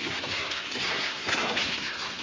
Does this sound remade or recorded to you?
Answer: remade